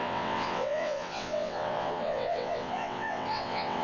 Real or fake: fake